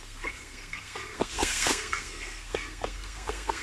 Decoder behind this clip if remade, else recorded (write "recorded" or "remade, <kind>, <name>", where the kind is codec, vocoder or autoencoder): remade, codec, SNAC